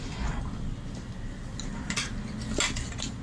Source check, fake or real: real